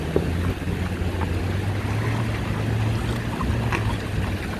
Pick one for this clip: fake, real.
real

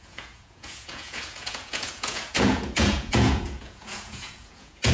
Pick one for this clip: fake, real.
fake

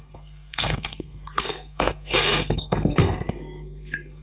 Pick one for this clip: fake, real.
fake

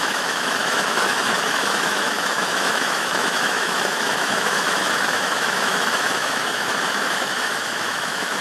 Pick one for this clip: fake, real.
fake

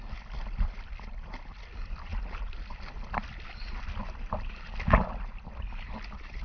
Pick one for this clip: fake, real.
real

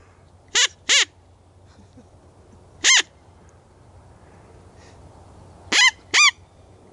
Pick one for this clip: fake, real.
real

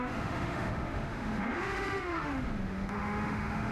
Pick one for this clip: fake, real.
fake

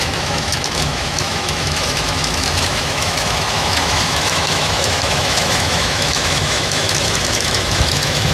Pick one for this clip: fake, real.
fake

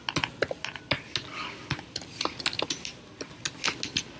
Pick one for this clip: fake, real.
real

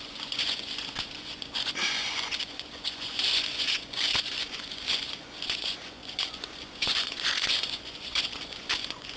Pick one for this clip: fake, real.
fake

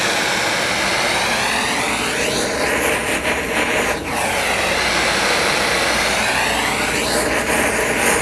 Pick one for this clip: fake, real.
real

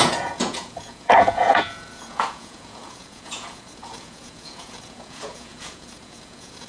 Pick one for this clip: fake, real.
fake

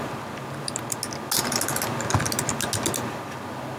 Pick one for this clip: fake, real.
real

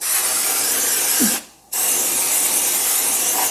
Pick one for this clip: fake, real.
real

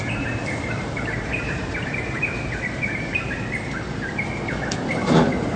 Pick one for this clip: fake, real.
fake